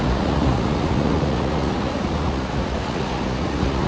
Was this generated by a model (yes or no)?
yes